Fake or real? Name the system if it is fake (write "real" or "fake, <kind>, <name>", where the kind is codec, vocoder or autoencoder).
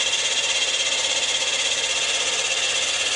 real